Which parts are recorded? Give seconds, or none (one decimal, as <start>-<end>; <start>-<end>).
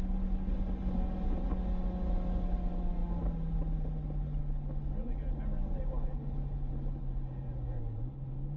0.0-7.0; 7.8-8.6